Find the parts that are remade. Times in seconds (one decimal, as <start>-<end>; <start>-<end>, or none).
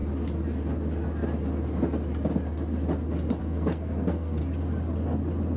3.4-4.4